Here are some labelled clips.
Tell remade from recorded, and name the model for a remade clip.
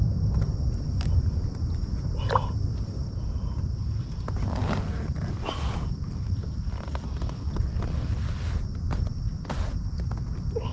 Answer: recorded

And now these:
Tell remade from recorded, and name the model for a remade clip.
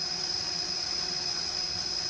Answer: remade, vocoder, WaveNeXt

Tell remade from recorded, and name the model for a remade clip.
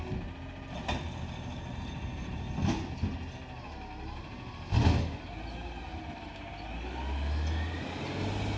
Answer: recorded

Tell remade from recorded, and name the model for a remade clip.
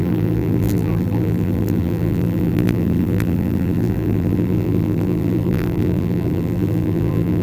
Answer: remade, vocoder, BigVGAN v2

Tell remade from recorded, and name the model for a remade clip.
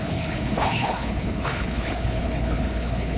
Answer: remade, codec, HILCodec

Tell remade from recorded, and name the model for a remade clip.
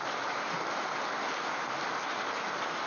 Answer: recorded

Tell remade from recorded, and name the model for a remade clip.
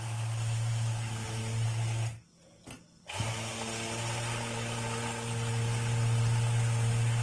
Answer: recorded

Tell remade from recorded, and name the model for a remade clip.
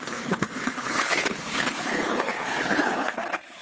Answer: remade, codec, HILCodec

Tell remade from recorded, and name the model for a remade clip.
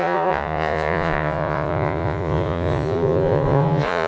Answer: remade, vocoder, Vocos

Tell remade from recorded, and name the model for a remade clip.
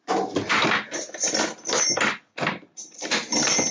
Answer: recorded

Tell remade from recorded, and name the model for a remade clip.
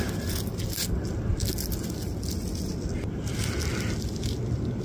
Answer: recorded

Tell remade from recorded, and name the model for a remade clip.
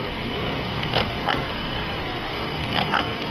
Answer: remade, codec, SNAC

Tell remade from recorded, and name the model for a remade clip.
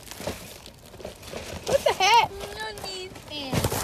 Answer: recorded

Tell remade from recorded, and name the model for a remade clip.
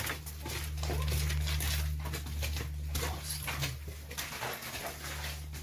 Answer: recorded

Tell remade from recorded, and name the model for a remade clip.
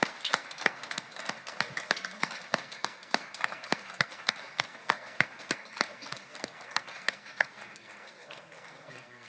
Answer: remade, codec, SNAC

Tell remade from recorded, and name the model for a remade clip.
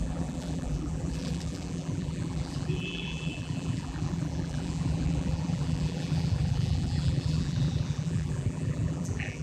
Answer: remade, vocoder, BigVGAN v2